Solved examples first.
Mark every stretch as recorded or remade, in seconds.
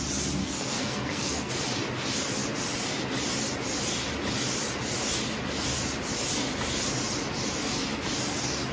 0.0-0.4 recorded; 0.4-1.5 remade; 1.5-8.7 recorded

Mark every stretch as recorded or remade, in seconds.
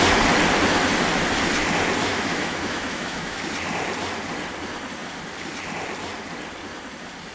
0.0-2.1 recorded; 2.1-3.4 remade; 3.4-7.3 recorded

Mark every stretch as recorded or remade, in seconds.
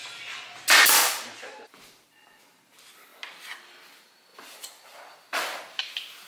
0.0-0.6 remade; 0.6-1.0 recorded; 1.0-2.4 remade; 2.4-4.3 recorded; 4.3-6.3 remade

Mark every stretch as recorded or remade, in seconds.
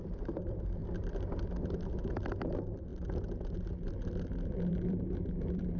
0.0-2.9 remade; 2.9-4.5 recorded; 4.5-5.8 remade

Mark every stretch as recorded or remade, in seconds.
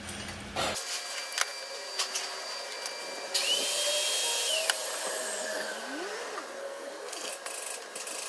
0.0-6.6 recorded; 6.6-7.3 remade; 7.3-8.3 recorded